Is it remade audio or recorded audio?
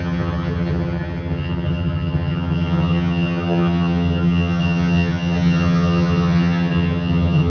remade